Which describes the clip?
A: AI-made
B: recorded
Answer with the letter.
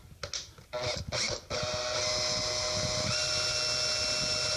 B